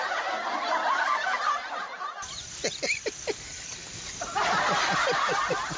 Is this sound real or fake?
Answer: real